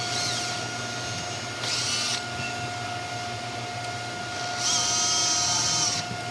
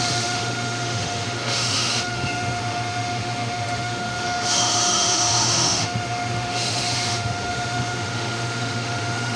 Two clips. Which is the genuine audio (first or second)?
first